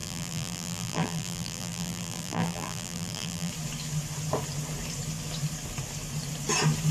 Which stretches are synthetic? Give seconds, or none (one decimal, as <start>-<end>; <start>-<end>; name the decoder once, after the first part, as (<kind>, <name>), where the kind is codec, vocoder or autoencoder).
0.0-3.5 (vocoder, BigVGAN v2)